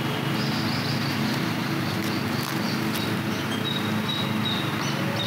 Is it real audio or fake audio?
real